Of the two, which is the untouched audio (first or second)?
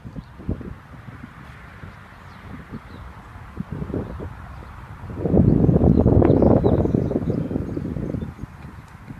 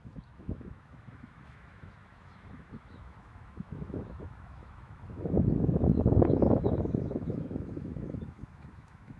first